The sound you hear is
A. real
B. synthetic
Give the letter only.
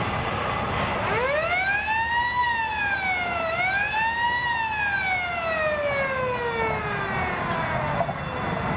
A